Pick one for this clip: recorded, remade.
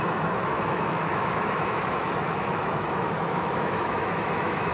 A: remade